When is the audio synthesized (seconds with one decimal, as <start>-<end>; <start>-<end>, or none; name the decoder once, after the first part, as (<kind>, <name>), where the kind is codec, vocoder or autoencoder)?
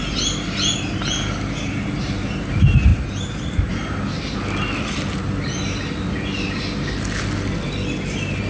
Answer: none